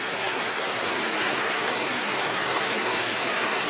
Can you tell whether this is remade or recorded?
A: remade